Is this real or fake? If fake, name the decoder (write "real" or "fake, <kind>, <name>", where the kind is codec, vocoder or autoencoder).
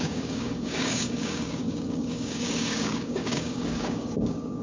fake, codec, DAC